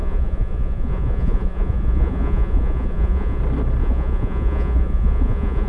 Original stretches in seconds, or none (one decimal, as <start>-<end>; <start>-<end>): 3.4-3.8